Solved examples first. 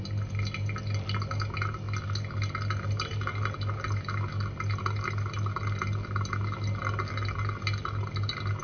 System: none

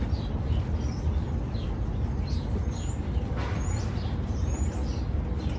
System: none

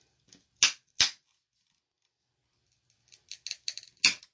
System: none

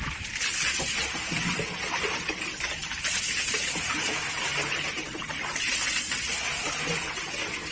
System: none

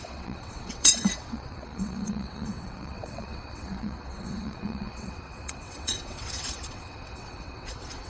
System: vocoder, WaveNeXt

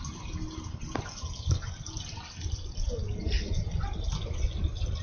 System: none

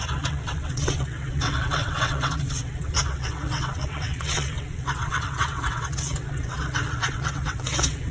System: vocoder, WaveNeXt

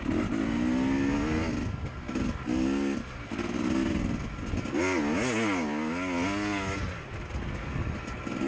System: none